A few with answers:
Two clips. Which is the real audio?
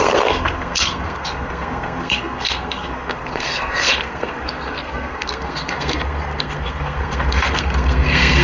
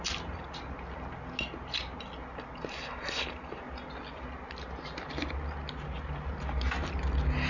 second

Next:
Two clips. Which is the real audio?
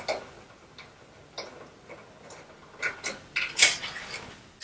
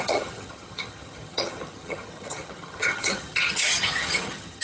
first